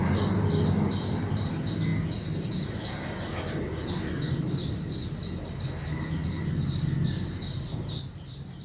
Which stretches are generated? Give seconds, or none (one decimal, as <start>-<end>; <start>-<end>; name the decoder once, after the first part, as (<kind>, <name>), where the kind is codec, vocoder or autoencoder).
none